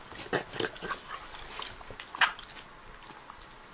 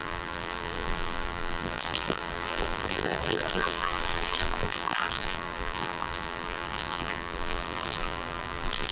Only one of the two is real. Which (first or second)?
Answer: first